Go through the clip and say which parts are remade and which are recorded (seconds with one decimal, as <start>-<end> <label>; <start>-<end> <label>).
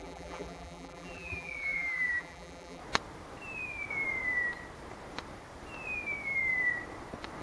0.0-2.8 remade; 2.8-7.4 recorded